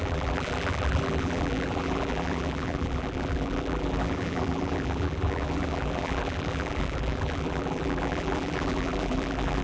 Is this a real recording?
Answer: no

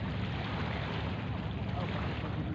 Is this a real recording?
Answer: yes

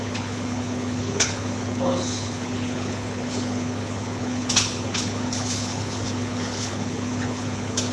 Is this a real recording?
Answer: no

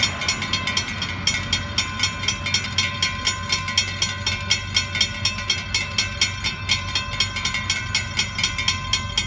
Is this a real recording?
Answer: yes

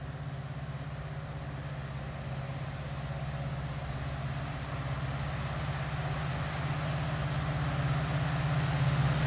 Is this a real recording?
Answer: yes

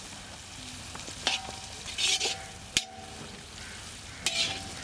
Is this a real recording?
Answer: yes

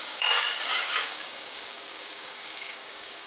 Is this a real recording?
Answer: no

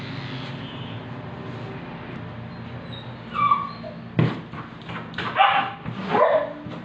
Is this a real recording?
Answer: yes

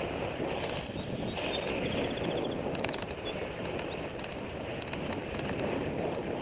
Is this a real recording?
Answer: yes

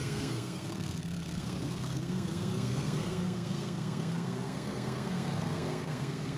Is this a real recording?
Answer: no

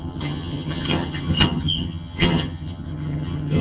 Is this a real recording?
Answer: no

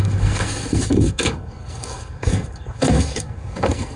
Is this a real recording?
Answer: no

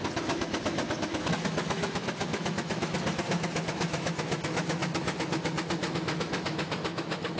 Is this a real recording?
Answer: no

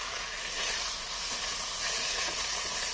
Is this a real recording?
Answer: no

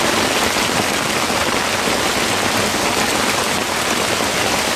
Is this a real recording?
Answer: yes